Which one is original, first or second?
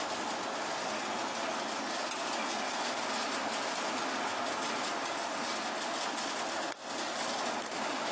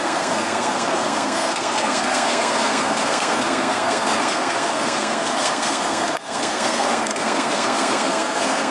first